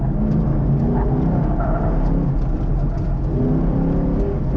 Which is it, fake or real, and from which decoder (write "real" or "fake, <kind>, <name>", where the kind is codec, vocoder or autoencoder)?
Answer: real